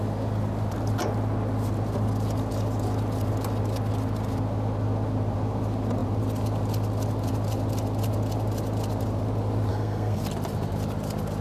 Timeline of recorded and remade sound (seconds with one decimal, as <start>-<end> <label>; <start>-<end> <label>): 0.0-9.7 recorded; 9.7-10.2 remade; 10.2-11.4 recorded